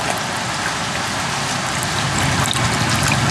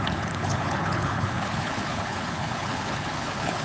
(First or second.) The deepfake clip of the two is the second